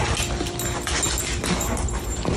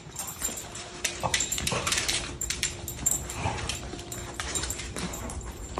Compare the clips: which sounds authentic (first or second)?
first